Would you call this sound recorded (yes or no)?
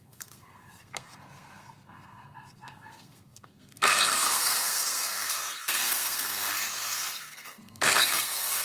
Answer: no